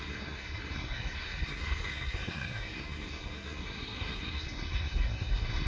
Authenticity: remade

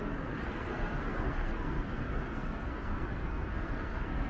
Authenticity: remade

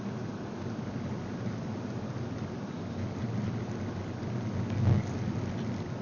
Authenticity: recorded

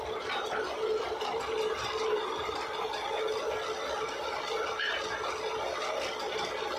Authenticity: recorded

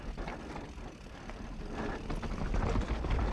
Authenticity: recorded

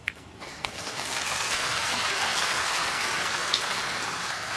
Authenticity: remade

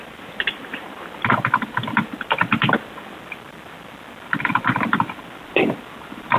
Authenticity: recorded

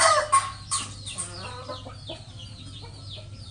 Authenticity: recorded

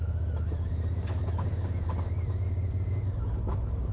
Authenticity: recorded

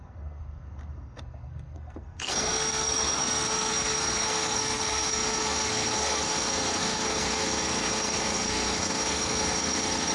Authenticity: remade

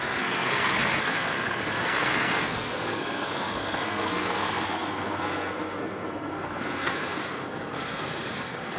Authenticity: remade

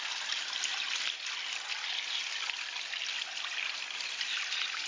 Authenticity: recorded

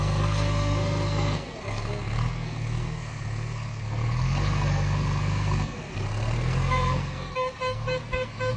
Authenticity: remade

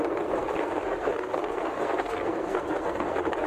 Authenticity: remade